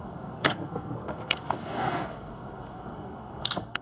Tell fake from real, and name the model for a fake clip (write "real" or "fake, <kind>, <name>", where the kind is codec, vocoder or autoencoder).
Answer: fake, codec, SNAC